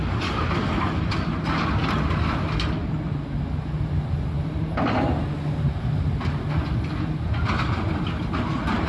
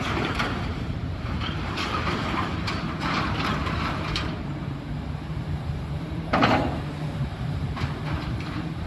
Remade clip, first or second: second